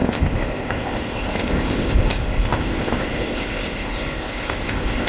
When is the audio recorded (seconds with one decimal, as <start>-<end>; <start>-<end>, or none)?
none